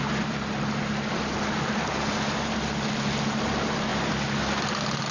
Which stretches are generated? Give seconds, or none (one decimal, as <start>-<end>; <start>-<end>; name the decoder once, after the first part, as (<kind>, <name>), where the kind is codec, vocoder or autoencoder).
none